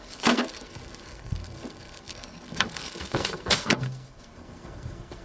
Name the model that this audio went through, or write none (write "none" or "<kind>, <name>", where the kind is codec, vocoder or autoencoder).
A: codec, SNAC